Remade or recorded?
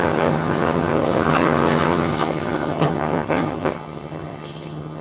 remade